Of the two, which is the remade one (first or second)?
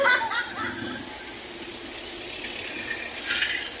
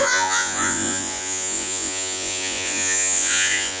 second